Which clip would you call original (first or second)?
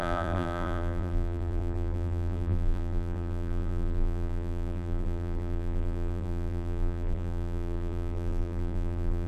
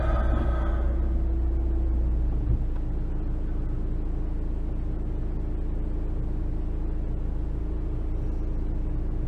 second